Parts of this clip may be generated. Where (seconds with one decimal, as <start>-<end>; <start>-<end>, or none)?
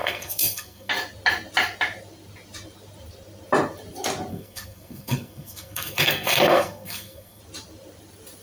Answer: 0.0-0.9; 4.3-7.4